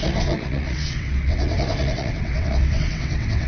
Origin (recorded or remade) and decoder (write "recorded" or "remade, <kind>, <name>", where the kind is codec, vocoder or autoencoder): remade, vocoder, WaveNeXt